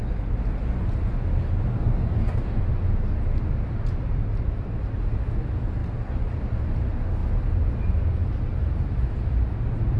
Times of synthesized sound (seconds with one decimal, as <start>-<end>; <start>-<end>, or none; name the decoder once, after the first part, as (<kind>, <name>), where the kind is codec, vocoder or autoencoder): 1.7-2.6 (codec, DAC)